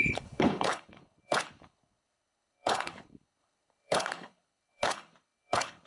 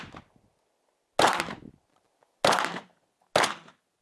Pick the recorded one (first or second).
second